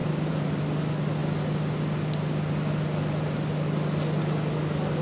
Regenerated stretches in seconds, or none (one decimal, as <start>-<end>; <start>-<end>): 0.0-0.6